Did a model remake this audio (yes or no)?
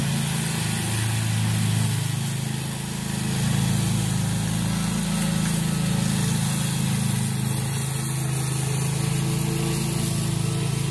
no